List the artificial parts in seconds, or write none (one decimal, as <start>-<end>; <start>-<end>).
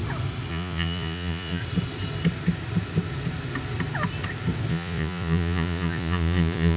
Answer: 0.5-1.6; 4.7-6.8